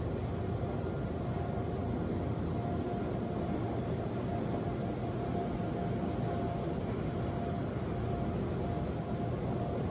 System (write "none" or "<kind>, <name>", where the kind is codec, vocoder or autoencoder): none